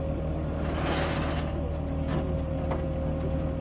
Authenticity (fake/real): real